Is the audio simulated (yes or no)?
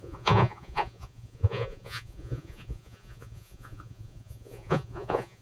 yes